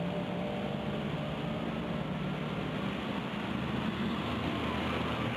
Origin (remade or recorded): recorded